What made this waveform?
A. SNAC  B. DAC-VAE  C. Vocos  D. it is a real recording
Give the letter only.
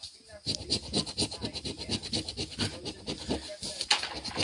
D